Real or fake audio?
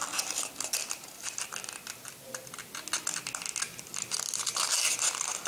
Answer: real